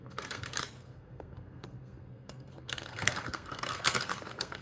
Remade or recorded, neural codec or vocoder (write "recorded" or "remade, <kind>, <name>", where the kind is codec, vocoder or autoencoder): remade, codec, SNAC